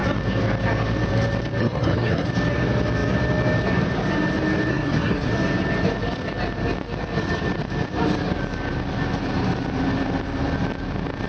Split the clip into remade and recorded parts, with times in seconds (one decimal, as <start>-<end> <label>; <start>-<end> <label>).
0.0-1.6 recorded; 1.6-2.3 remade; 2.3-4.7 recorded; 4.7-5.3 remade; 5.3-11.3 recorded